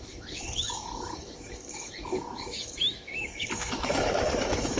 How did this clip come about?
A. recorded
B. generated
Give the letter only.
B